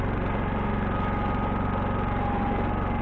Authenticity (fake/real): real